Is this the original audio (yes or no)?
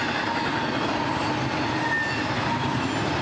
yes